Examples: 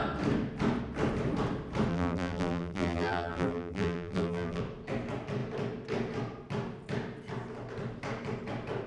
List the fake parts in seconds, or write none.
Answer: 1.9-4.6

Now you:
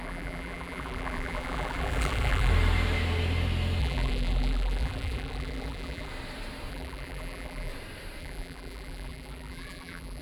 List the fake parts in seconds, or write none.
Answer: 0.0-2.5; 3.8-6.1; 6.7-7.7; 8.2-10.2

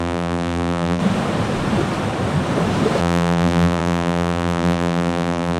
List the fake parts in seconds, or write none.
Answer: 0.0-1.0; 3.0-5.6

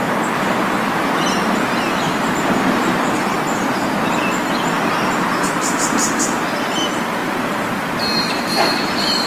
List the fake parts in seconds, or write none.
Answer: 7.2-9.3

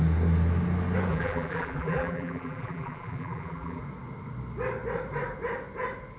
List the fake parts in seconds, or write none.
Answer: 1.1-3.8

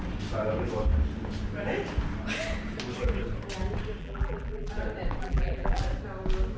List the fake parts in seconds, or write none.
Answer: 4.0-4.7; 5.2-5.8